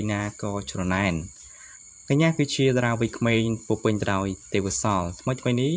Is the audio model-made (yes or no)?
yes